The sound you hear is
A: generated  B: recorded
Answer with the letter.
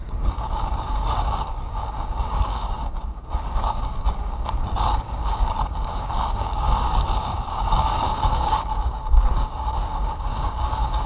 A